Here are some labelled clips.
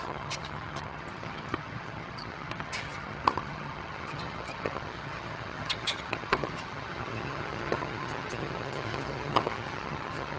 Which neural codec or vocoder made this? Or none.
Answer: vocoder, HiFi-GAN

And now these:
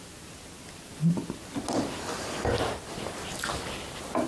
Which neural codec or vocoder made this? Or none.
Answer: none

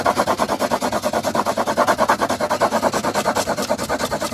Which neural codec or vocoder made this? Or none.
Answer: none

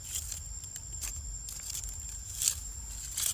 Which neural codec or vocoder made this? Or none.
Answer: none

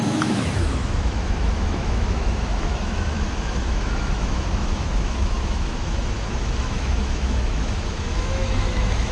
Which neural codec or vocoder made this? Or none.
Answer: autoencoder, DAC-VAE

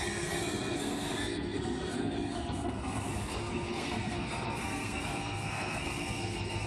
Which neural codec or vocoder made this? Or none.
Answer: codec, SNAC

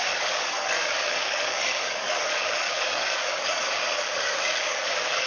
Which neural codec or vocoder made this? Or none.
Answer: codec, DAC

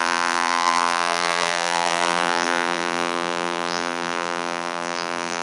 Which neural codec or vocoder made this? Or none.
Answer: vocoder, BigVGAN v2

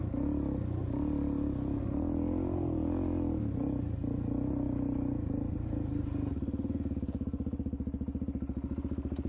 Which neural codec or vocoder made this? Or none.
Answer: none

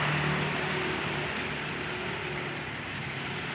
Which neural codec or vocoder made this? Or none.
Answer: none